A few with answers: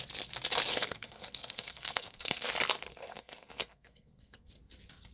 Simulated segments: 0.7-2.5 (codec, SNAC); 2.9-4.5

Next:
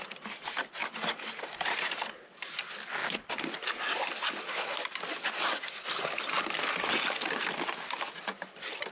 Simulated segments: none

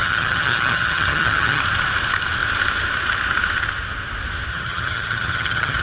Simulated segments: 0.0-1.6 (vocoder, HiFi-GAN); 4.5-5.8

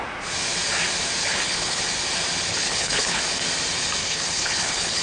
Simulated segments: 1.2-1.8 (codec, HILCodec); 2.5-3.2; 4.0-5.0